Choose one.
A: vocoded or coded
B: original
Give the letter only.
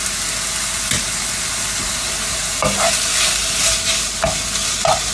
B